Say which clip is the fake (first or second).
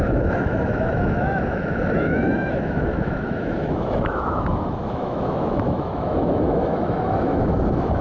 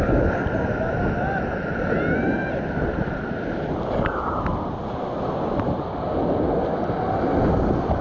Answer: first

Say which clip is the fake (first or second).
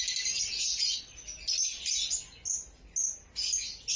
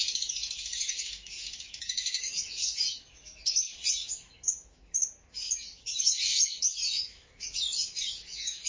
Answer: second